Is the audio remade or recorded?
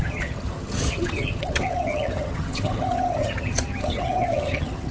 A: remade